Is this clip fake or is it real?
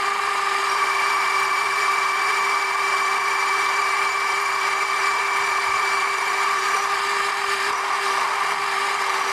fake